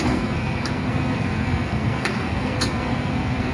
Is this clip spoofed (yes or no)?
yes